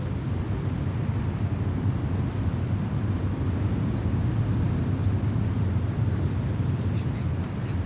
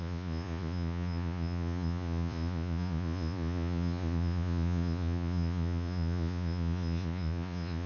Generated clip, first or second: second